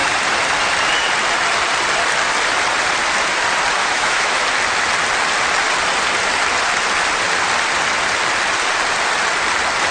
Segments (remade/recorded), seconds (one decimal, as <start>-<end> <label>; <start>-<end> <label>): 0.0-3.8 recorded; 3.8-4.4 remade; 4.4-9.9 recorded